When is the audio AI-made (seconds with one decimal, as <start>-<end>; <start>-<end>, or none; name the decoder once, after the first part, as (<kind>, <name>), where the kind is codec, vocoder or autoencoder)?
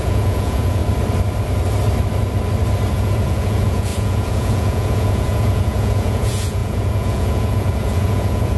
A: 0.0-0.8 (vocoder, Vocos); 2.9-8.6